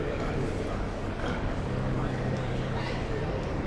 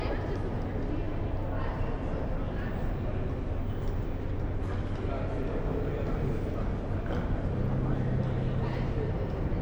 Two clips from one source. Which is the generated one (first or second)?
first